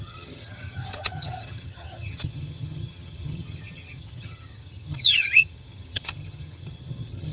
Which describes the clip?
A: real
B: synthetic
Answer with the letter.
B